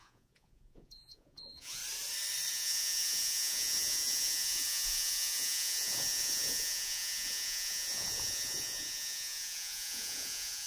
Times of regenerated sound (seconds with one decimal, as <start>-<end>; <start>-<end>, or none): 0.0-1.8; 2.5-10.7